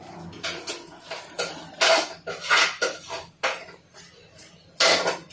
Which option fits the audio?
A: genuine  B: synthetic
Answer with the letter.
A